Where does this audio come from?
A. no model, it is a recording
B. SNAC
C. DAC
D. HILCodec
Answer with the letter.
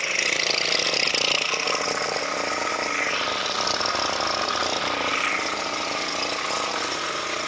A